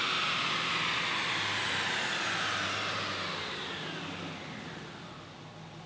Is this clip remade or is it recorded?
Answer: recorded